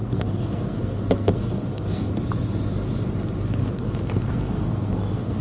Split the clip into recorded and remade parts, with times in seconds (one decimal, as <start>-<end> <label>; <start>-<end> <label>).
0.0-2.1 remade; 2.1-3.6 recorded; 3.6-5.4 remade